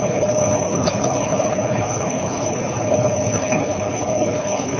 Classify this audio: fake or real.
fake